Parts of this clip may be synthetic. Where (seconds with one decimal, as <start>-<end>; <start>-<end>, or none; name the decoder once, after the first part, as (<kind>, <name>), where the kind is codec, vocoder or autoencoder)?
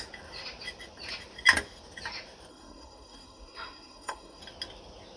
2.5-4.4 (codec, SNAC)